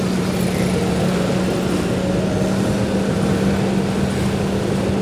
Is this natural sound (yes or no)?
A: yes